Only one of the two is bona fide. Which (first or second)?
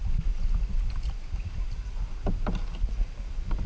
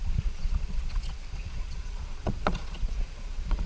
first